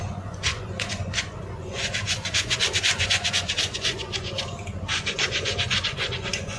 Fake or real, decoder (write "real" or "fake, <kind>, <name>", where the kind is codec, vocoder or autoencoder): fake, vocoder, Vocos